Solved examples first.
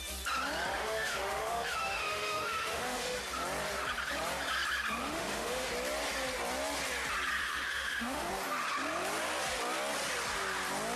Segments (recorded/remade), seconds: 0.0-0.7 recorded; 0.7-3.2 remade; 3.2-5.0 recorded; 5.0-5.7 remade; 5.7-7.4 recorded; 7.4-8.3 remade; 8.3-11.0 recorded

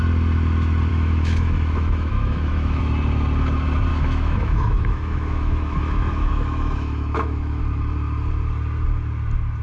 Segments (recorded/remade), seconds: 0.0-0.9 recorded; 0.9-2.8 remade; 2.8-3.9 recorded; 3.9-7.6 remade; 7.6-9.6 recorded

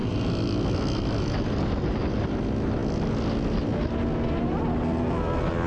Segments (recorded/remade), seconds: 0.0-5.7 recorded

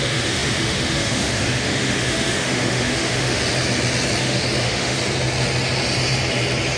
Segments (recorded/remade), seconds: 0.0-3.4 remade; 3.4-4.2 recorded; 4.2-5.0 remade; 5.0-6.8 recorded

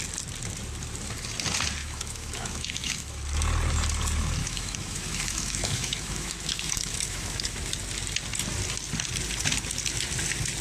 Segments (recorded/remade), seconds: 0.0-1.8 recorded; 1.8-3.2 remade; 3.2-4.4 recorded; 4.4-7.7 remade; 7.7-10.6 recorded